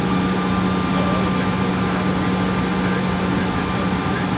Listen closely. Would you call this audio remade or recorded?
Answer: recorded